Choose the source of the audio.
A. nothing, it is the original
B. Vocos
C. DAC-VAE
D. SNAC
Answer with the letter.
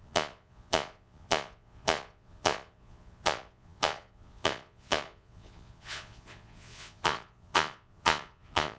B